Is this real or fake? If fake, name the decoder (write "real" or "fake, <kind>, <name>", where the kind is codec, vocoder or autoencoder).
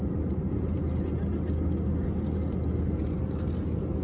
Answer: real